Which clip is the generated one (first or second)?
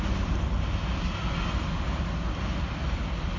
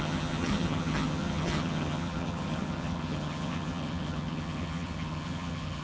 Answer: second